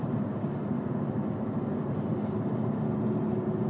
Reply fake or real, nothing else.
real